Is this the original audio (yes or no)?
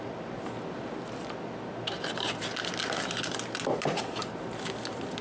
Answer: yes